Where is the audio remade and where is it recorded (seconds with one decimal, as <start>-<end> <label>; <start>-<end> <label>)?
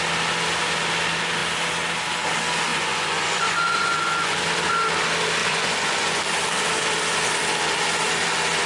0.0-2.7 recorded; 2.7-4.4 remade; 4.4-5.4 recorded; 5.4-6.2 remade; 6.2-8.7 recorded